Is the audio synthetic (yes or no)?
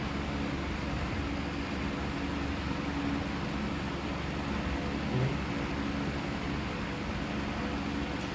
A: no